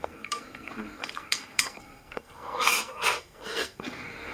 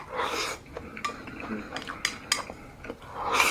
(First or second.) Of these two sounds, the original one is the second